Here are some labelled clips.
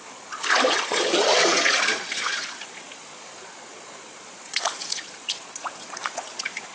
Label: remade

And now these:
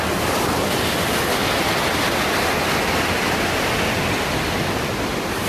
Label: recorded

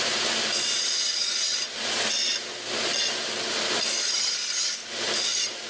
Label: recorded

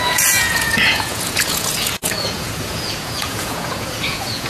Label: remade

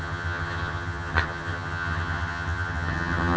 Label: remade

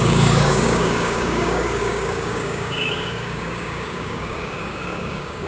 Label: remade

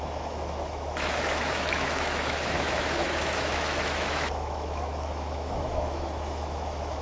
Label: remade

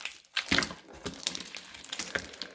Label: recorded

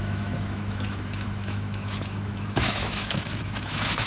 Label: remade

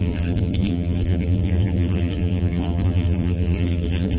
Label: remade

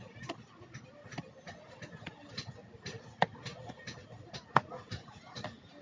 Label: recorded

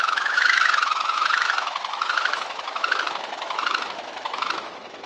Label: remade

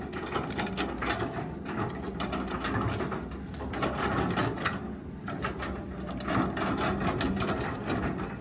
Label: recorded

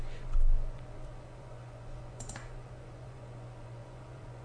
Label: remade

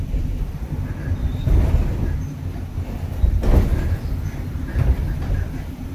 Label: recorded